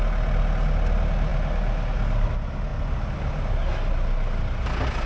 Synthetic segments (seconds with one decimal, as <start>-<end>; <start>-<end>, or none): none